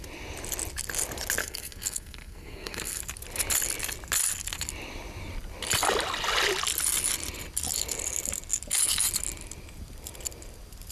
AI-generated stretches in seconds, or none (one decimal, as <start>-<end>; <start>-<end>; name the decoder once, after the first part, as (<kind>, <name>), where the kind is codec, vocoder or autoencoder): 1.4-3.0 (codec, SNAC)